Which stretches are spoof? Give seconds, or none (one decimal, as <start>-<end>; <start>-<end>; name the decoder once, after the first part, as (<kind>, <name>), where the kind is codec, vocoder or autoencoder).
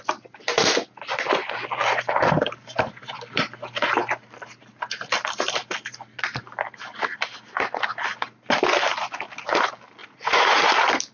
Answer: 10.0-10.7 (vocoder, Vocos)